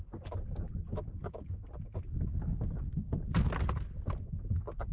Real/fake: real